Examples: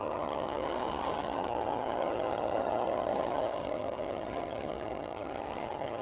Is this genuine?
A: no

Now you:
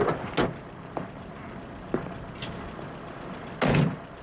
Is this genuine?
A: yes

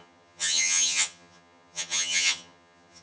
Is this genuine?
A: no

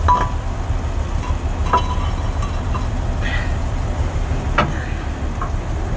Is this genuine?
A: yes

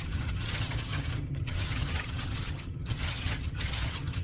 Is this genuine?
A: no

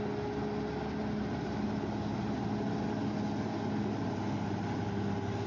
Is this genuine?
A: yes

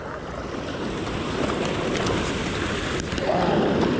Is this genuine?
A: yes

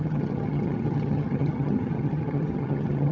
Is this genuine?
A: no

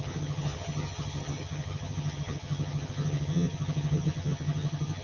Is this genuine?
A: no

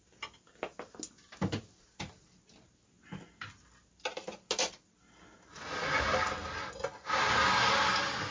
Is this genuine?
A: yes